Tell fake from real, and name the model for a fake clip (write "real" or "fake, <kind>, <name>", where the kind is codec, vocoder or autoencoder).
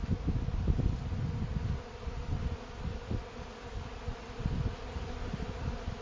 real